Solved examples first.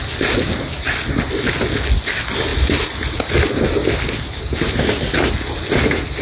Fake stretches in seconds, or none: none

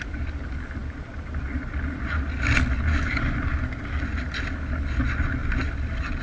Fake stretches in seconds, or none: none